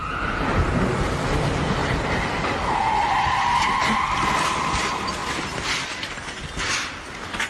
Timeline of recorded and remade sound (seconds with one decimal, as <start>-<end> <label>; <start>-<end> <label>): 0.0-1.4 remade; 1.4-1.8 recorded; 1.8-2.5 remade; 2.5-7.5 recorded